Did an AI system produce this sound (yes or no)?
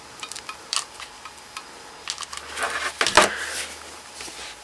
no